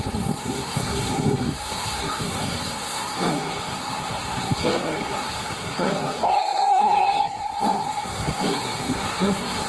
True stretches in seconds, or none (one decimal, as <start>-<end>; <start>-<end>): none